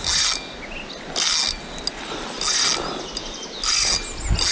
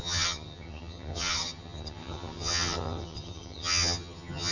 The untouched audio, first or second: first